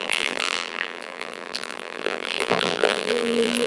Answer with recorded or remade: remade